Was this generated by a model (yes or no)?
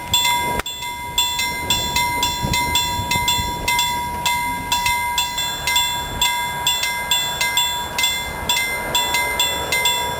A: no